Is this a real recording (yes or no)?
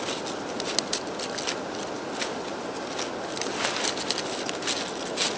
yes